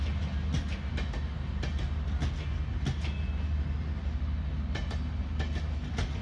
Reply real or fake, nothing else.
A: real